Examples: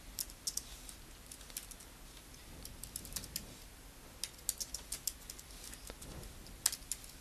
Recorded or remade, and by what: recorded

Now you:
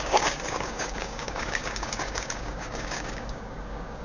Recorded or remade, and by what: remade, codec, DAC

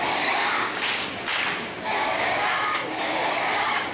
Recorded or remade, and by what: remade, codec, DAC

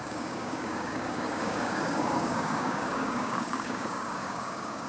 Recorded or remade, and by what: remade, codec, DAC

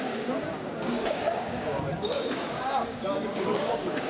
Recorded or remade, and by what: remade, codec, DAC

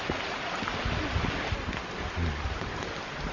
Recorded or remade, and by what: recorded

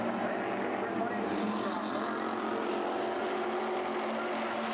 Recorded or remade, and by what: recorded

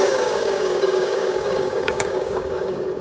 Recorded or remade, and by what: remade, codec, DAC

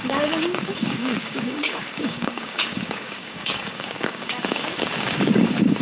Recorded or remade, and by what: remade, codec, DAC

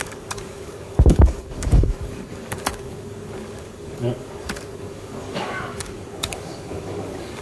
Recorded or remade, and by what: remade, codec, DAC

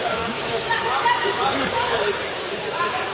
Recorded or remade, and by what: remade, codec, DAC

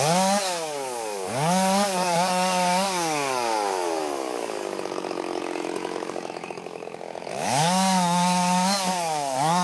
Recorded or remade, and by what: remade, codec, DAC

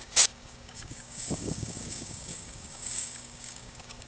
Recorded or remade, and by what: remade, codec, DAC